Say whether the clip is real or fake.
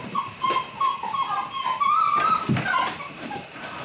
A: real